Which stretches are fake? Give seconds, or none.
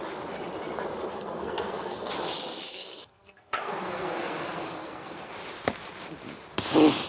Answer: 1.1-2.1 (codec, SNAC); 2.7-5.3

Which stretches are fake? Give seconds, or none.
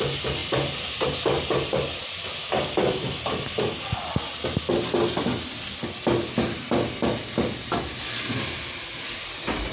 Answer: 0.4-1.1 (vocoder, BigVGAN v2)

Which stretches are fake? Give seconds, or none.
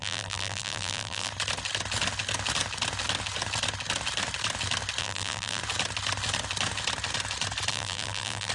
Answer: 0.0-1.3 (vocoder, BigVGAN v2); 5.0-5.6; 7.7-8.5